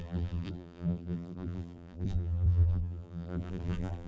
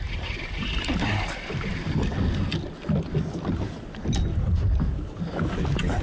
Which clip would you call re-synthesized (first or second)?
first